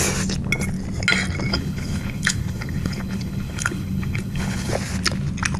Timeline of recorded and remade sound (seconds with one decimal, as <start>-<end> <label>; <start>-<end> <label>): 0.0-1.5 recorded; 1.5-4.7 remade; 4.7-5.6 recorded